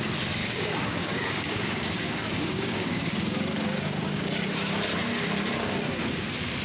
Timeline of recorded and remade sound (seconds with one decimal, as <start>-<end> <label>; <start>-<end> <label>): 0.0-0.4 recorded; 0.4-4.2 remade; 4.2-6.6 recorded